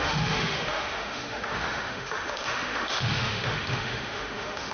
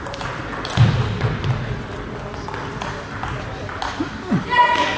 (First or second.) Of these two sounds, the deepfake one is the first